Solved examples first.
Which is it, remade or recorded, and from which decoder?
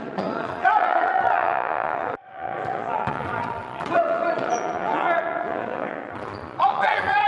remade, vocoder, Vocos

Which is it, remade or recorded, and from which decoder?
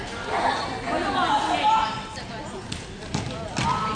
recorded